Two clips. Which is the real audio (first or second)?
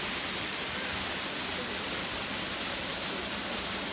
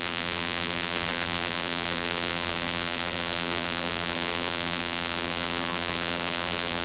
first